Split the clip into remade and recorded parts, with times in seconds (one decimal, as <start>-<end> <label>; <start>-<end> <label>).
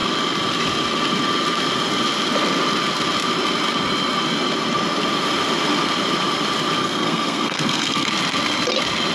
0.0-6.8 recorded; 6.8-8.1 remade; 8.1-9.1 recorded